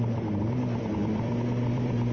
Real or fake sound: fake